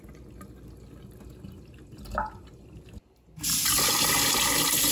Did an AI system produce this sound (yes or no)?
no